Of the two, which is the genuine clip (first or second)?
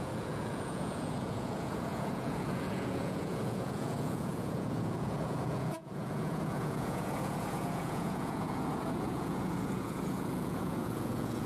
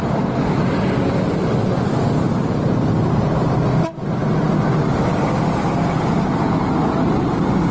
second